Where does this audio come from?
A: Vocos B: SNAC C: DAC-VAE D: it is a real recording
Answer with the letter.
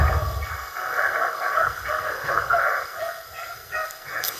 B